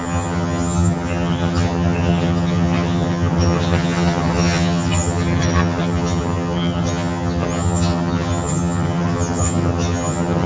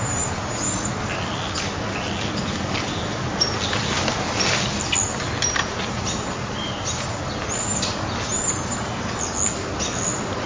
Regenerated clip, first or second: first